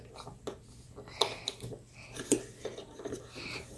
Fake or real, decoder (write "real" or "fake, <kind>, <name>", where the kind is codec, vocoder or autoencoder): real